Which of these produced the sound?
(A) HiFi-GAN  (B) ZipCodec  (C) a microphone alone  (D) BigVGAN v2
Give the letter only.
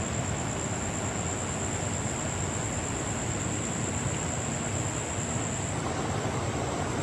C